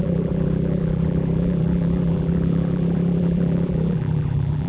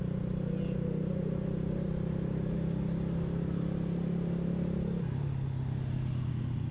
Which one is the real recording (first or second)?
second